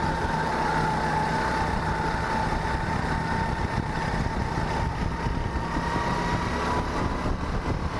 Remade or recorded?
recorded